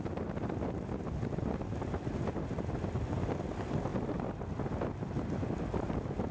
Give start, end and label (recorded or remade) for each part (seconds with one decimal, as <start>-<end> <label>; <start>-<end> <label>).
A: 0.0-6.3 recorded